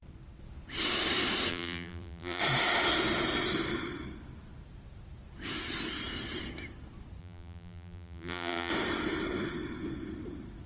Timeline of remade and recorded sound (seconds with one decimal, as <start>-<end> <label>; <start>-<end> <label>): 0.0-1.5 recorded; 1.5-2.4 remade; 2.4-7.2 recorded; 7.2-8.7 remade; 8.7-10.7 recorded